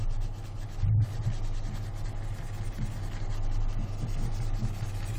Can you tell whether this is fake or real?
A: real